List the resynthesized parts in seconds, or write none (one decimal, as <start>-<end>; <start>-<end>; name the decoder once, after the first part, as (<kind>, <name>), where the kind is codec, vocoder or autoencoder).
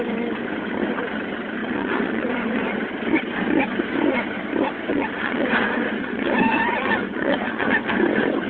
1.6-2.8 (vocoder, Vocos); 4.9-7.9